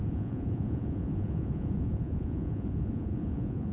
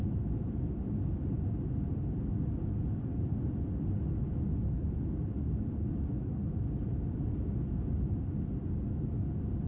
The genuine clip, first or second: second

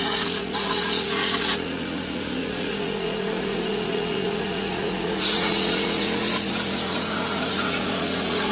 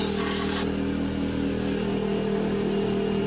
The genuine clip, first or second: second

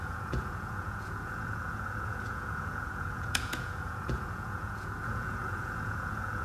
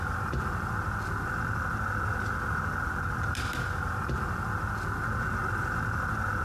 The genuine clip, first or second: second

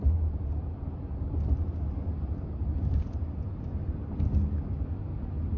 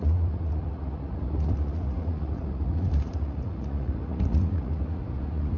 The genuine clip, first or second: first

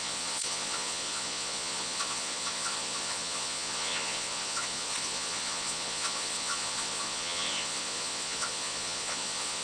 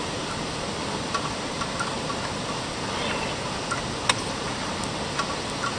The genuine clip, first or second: second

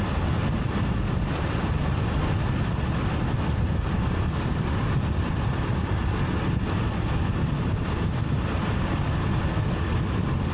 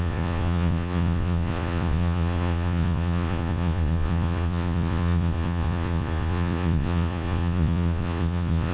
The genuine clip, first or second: first